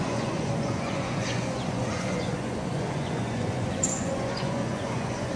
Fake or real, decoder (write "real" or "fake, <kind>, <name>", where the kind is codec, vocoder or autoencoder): fake, vocoder, Vocos